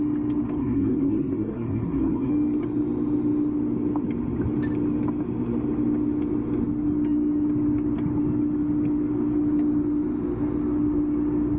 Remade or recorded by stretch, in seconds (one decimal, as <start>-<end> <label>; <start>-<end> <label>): 0.0-0.6 recorded; 0.6-2.3 remade; 2.3-11.6 recorded